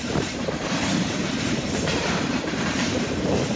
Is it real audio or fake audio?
fake